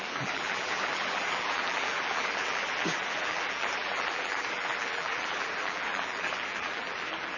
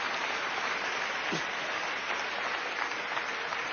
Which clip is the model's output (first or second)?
first